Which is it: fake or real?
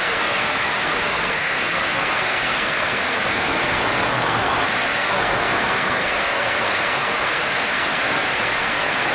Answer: fake